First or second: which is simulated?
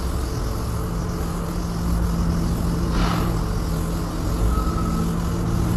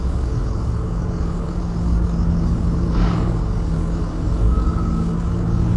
second